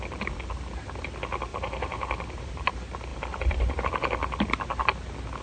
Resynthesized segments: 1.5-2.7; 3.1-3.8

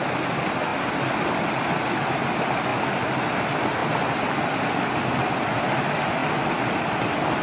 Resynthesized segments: 0.7-1.4; 6.2-6.8

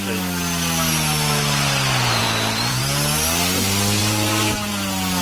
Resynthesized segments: 2.2-2.8; 4.0-4.7

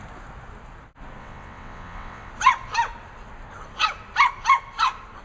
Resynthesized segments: 1.2-2.3

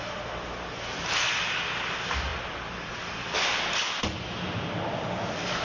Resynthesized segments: none

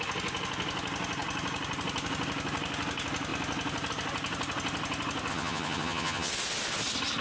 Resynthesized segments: 5.3-6.3

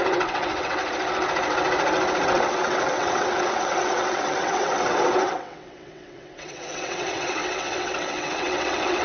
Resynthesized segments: 0.0-0.8; 2.2-9.0